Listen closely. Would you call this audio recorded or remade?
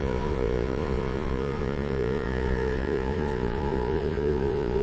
remade